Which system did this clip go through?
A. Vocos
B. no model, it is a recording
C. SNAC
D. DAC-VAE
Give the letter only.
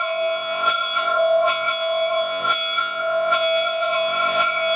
A